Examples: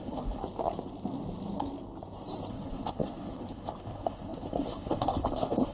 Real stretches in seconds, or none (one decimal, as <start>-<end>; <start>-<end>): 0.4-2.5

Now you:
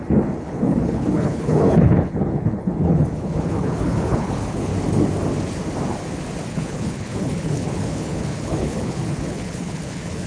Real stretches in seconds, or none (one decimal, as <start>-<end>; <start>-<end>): 4.7-6.5

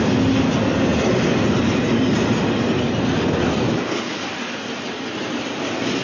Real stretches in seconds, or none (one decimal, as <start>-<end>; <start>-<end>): 0.0-6.0

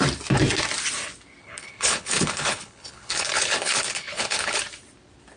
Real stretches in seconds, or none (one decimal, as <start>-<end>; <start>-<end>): 0.0-1.4; 4.6-5.4